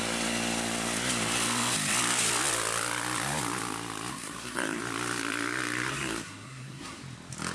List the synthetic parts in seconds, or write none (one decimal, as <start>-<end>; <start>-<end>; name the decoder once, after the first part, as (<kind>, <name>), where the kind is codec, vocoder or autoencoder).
4.1-4.8 (codec, SNAC); 5.9-7.0